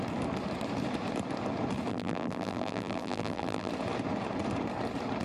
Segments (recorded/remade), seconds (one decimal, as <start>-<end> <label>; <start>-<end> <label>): 0.0-1.9 recorded; 1.9-3.7 remade; 3.7-5.2 recorded